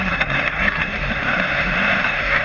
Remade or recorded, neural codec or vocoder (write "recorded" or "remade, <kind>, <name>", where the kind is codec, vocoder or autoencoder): remade, codec, SNAC